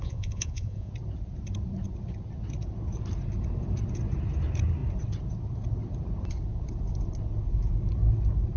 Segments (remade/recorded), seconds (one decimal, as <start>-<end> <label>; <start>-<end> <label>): 0.0-0.9 remade; 0.9-8.6 recorded